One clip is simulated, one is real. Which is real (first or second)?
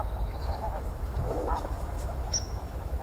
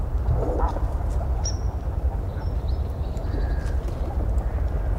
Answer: second